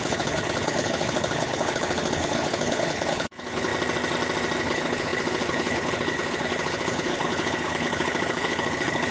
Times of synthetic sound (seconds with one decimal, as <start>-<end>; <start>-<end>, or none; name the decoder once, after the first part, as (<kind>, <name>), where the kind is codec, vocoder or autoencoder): 0.0-3.7 (codec, HILCodec); 4.6-9.1